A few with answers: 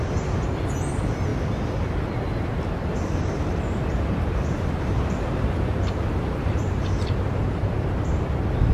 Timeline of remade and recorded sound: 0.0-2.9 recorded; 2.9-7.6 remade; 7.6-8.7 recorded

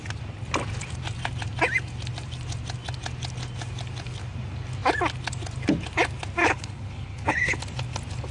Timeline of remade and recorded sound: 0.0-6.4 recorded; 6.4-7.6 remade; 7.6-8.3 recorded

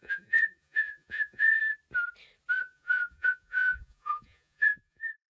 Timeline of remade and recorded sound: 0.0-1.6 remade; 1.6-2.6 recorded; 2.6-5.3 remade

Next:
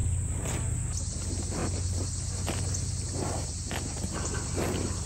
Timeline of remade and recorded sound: 0.0-5.1 recorded